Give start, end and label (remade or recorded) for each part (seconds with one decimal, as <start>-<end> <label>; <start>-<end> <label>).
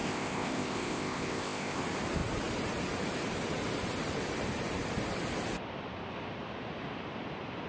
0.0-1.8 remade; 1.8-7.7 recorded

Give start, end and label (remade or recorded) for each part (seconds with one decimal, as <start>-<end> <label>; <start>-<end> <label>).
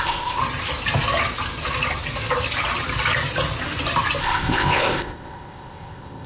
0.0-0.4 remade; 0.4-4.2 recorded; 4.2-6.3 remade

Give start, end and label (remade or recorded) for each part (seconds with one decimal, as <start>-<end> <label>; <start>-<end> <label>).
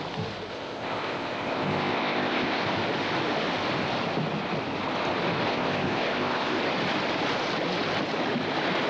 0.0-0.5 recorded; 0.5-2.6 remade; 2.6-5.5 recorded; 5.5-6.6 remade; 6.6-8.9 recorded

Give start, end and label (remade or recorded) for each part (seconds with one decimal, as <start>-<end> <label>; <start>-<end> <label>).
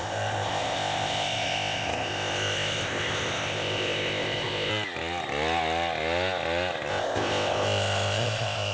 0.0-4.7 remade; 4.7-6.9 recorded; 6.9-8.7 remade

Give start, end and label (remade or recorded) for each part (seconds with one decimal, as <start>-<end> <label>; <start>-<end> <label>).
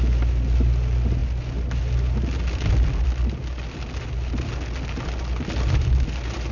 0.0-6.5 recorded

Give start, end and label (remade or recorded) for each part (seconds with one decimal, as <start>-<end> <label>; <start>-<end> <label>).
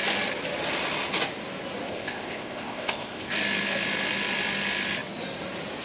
0.0-1.9 recorded; 1.9-3.3 remade; 3.3-5.8 recorded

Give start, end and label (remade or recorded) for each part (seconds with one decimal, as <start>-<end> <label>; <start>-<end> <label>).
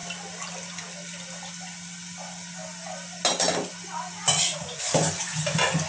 0.0-5.9 recorded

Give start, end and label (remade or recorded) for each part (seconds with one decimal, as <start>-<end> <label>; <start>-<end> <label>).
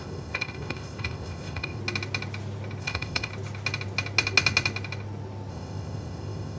0.0-1.8 remade; 1.8-2.8 recorded; 2.8-3.3 remade; 3.3-5.5 recorded; 5.5-6.6 remade